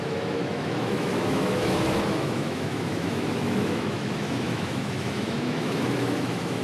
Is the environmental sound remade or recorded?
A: remade